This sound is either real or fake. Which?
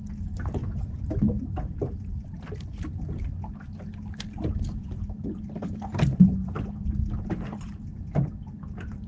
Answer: real